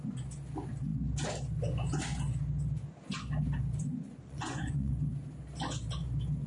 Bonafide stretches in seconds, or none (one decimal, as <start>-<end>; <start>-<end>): 0.0-3.9; 4.9-6.5